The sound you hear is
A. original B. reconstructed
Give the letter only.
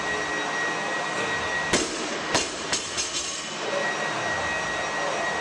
A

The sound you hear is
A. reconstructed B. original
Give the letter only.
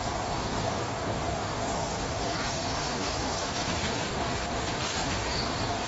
A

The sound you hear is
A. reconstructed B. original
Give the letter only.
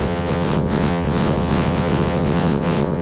A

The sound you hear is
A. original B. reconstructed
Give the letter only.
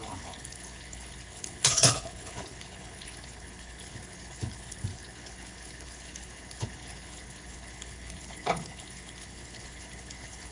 B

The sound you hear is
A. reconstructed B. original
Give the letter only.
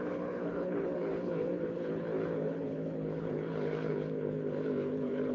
A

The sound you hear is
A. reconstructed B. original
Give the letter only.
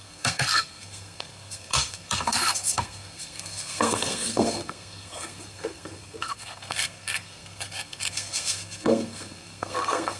A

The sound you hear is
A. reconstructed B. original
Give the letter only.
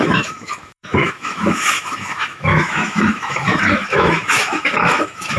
A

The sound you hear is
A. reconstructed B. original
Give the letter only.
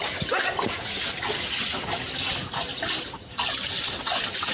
B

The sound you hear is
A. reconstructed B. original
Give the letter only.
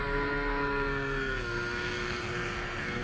A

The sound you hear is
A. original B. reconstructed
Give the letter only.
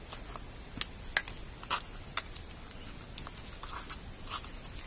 A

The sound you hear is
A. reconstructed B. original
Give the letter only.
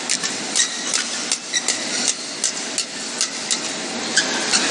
B